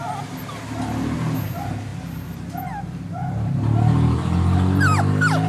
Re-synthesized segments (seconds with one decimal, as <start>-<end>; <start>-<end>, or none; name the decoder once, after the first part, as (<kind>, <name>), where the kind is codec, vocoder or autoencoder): none